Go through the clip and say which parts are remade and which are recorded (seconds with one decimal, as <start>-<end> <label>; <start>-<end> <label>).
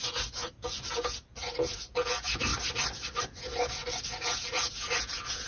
0.0-2.5 remade; 2.5-3.2 recorded; 3.2-5.5 remade